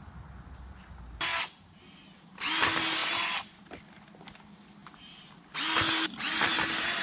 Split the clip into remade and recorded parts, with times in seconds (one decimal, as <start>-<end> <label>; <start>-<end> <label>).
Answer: 0.0-1.3 recorded; 1.3-2.4 remade; 2.4-3.0 recorded; 3.0-3.8 remade; 3.8-7.0 recorded